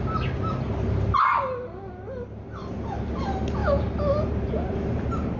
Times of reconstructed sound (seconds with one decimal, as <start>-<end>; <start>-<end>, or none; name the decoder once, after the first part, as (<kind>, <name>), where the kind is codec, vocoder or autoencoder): none